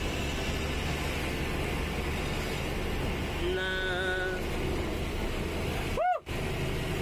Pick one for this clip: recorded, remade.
recorded